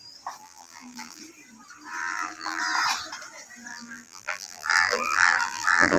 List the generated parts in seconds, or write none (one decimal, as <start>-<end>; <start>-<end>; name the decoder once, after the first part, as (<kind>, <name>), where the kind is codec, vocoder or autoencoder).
0.4-1.2 (vocoder, BigVGAN v2); 2.0-2.6; 3.7-6.0